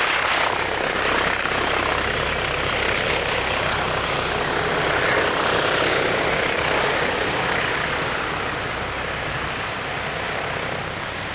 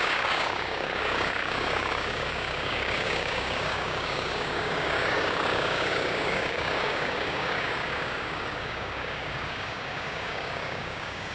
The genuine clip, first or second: first